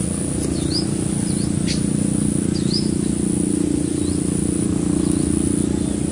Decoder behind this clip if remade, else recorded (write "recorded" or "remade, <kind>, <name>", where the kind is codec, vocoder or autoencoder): recorded